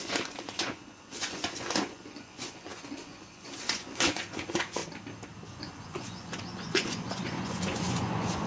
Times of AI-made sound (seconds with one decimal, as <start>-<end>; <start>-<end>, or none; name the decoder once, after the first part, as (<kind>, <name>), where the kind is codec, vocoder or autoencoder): 0.0-4.8 (vocoder, Vocos); 5.5-8.5